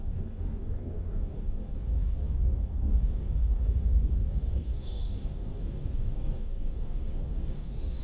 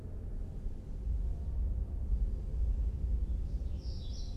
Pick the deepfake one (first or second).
first